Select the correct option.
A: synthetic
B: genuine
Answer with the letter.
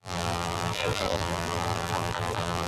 A